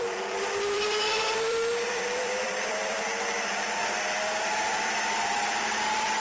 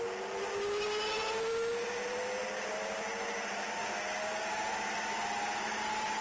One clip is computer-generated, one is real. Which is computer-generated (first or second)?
first